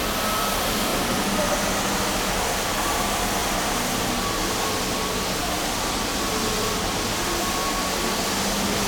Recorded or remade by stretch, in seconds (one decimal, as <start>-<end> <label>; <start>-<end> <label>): 0.0-8.9 recorded